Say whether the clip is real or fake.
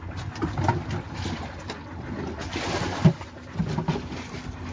real